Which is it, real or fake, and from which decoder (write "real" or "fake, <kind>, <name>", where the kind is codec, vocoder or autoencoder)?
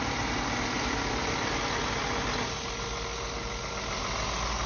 real